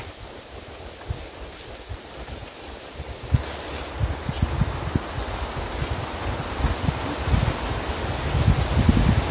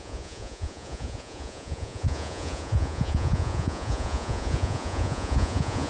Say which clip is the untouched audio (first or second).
first